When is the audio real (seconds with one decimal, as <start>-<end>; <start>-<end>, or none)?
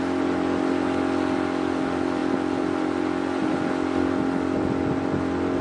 0.0-5.6